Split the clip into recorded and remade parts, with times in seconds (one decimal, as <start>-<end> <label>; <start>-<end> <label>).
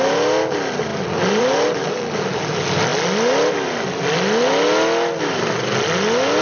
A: 0.0-6.4 recorded